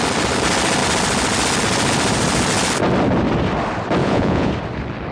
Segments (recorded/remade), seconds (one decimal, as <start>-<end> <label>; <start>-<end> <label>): 0.0-4.0 recorded; 4.0-4.5 remade; 4.5-5.1 recorded